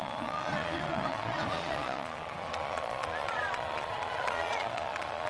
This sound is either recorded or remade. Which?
remade